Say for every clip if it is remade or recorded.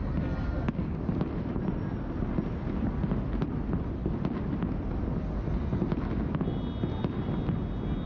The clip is recorded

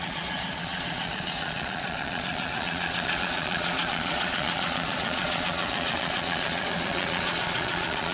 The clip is remade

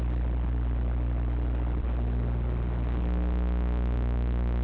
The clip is recorded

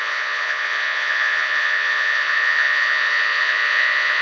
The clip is remade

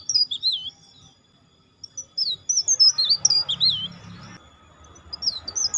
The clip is recorded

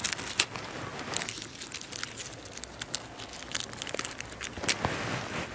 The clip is recorded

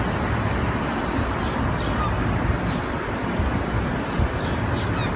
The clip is recorded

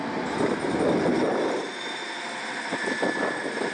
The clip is recorded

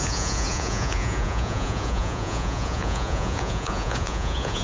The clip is remade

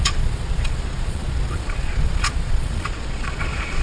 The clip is remade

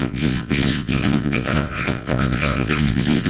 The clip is remade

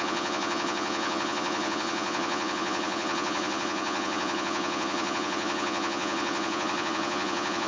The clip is remade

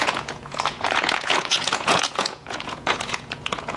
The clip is remade